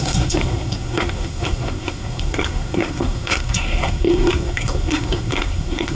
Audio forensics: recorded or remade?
remade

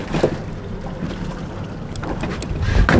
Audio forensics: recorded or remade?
recorded